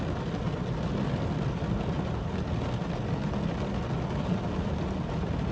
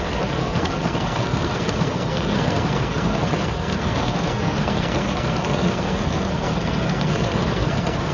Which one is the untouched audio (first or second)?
first